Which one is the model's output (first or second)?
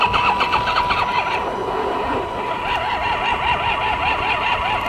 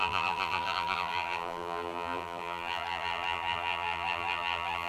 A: second